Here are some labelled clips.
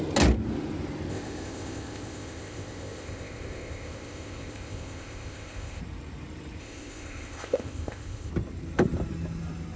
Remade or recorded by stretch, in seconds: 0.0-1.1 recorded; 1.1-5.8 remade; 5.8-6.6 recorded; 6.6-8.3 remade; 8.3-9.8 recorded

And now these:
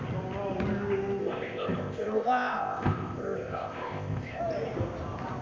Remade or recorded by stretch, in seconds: 0.0-1.2 recorded; 1.2-4.4 remade; 4.4-5.4 recorded

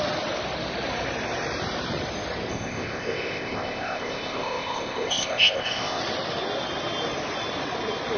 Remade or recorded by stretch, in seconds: 0.0-2.5 recorded; 2.5-6.0 remade; 6.0-8.2 recorded